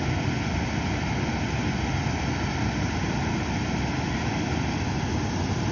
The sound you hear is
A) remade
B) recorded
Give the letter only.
B